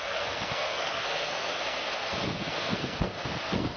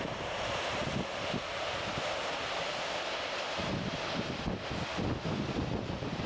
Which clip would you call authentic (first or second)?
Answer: second